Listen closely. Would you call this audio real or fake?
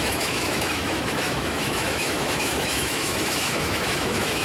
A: fake